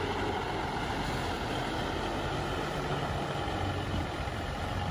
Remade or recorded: recorded